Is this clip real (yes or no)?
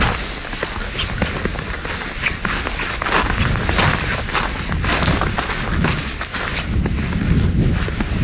yes